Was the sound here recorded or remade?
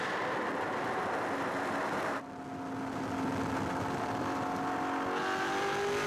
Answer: recorded